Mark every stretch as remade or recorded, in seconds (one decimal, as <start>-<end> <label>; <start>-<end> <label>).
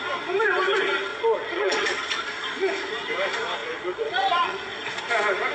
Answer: 0.0-1.1 recorded; 1.1-2.7 remade; 2.7-3.6 recorded; 3.6-5.0 remade; 5.0-5.5 recorded